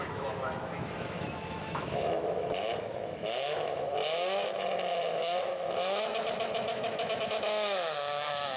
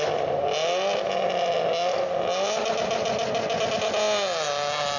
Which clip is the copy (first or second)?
first